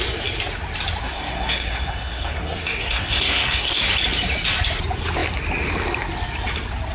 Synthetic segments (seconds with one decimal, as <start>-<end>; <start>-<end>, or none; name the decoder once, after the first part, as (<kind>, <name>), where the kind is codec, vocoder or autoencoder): 1.0-3.8 (codec, SNAC)